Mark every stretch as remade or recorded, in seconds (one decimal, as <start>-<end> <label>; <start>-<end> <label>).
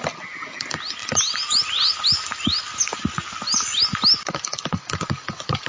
0.0-5.7 recorded